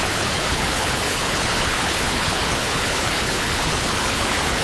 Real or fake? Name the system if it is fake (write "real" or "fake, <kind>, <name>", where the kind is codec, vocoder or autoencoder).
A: fake, codec, HILCodec